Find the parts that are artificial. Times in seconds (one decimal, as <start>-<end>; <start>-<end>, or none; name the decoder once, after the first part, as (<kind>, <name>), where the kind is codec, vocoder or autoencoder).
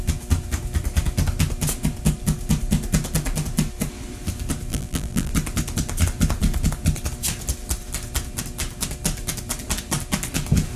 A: 4.7-5.3 (vocoder, BigVGAN v2)